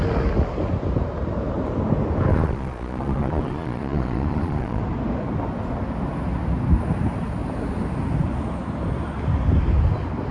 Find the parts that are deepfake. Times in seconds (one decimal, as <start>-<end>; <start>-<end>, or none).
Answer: 2.3-4.8